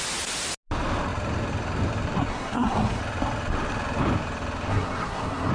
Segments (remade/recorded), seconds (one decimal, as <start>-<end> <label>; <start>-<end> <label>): 0.0-2.3 recorded; 2.3-3.0 remade; 3.0-4.7 recorded; 4.7-5.5 remade